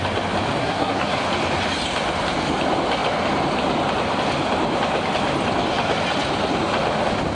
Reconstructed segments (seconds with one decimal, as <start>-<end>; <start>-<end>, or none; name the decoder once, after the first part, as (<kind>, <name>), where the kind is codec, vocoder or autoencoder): 0.6-1.2 (codec, SNAC)